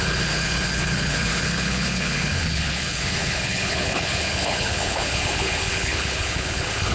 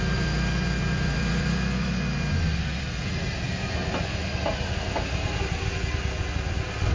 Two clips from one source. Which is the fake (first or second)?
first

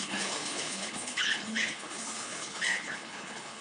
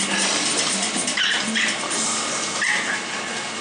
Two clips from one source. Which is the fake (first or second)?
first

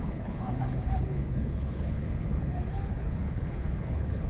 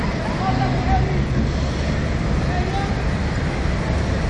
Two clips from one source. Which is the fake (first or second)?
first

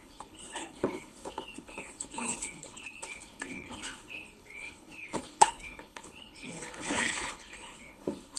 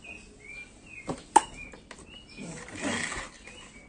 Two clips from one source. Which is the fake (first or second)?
first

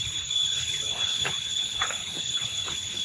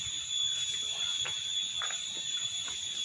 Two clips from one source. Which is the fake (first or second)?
first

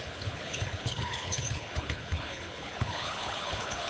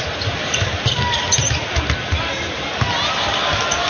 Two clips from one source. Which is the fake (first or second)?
first